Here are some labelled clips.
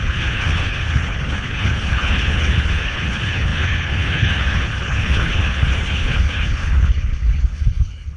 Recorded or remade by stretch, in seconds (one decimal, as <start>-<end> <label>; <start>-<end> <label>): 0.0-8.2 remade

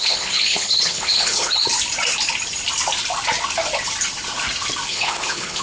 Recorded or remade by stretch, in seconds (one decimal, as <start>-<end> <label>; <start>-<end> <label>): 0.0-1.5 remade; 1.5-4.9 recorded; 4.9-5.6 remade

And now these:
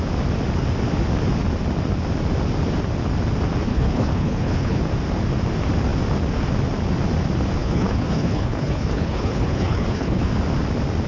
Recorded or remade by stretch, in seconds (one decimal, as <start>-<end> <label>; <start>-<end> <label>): 0.0-3.7 recorded; 3.7-4.8 remade; 4.8-7.6 recorded; 7.6-10.2 remade; 10.2-11.1 recorded